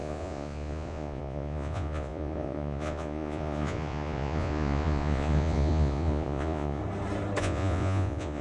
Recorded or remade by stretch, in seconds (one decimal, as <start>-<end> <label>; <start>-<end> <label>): 0.0-6.8 remade; 6.8-7.4 recorded; 7.4-8.4 remade